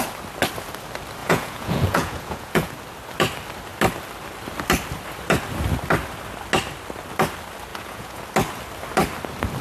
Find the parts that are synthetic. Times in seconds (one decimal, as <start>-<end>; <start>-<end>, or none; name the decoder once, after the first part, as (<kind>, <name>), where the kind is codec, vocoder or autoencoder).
1.2-2.7 (vocoder, Vocos); 7.7-8.2